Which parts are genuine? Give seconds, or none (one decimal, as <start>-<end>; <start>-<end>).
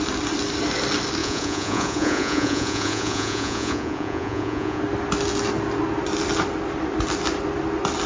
0.0-1.2; 4.8-8.1